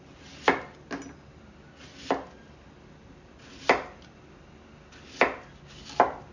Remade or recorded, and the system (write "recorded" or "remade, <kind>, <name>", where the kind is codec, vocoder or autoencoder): recorded